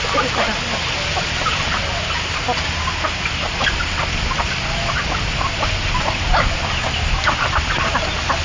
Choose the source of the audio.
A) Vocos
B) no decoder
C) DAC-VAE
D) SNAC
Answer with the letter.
B